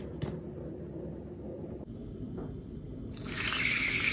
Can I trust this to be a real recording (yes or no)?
yes